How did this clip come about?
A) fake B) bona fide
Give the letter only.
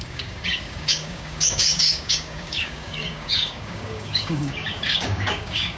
A